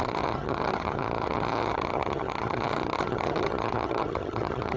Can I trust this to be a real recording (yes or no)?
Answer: no